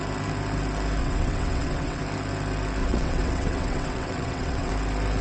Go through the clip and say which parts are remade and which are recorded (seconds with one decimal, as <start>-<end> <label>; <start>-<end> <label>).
0.0-1.0 recorded; 1.0-2.0 remade; 2.0-2.8 recorded; 2.8-4.7 remade; 4.7-5.2 recorded